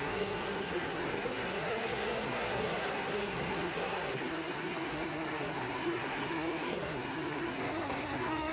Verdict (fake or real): fake